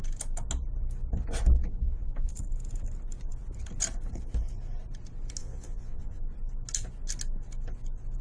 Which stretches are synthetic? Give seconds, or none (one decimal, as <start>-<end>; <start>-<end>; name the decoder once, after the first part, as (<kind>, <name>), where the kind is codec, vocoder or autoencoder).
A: 5.4-6.2 (vocoder, Vocos)